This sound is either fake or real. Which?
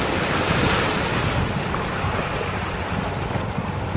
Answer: real